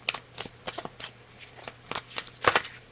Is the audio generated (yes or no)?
no